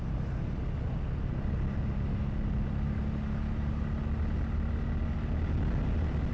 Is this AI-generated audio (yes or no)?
no